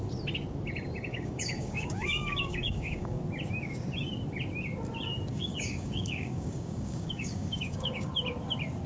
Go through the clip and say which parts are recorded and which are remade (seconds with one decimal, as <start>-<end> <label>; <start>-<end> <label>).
0.0-1.1 recorded; 1.1-3.2 remade; 3.2-5.3 recorded; 5.3-8.1 remade; 8.1-8.9 recorded